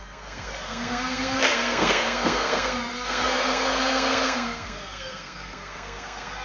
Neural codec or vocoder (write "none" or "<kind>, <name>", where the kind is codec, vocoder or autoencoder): codec, SNAC